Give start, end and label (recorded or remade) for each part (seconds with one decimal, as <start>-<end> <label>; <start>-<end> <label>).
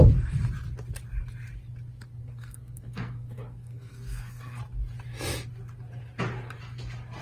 0.0-2.2 recorded; 2.2-4.6 remade; 4.6-7.2 recorded